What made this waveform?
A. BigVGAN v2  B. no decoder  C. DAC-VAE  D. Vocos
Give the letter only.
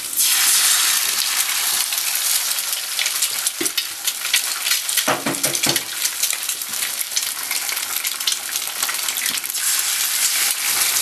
B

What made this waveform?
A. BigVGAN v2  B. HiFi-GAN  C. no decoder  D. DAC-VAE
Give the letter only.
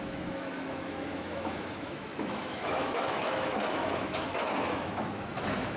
D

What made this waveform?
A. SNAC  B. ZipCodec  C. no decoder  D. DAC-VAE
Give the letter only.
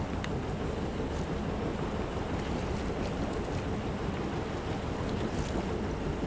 C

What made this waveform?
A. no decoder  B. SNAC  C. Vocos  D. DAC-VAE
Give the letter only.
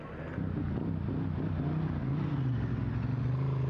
A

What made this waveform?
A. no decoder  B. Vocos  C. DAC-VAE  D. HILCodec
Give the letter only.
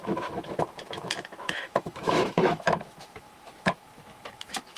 C